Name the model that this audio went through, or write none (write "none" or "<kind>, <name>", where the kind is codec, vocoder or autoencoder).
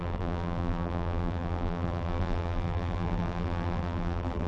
vocoder, BigVGAN v2